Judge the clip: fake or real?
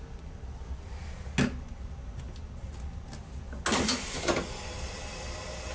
real